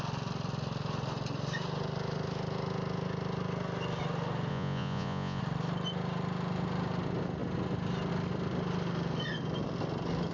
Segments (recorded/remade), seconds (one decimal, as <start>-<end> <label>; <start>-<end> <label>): 0.0-4.5 recorded; 4.5-5.4 remade; 5.4-10.3 recorded